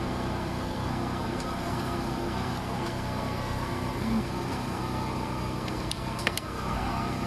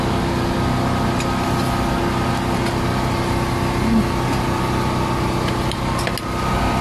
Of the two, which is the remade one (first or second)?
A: first